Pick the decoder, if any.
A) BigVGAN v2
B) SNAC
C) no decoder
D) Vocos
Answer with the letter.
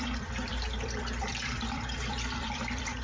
A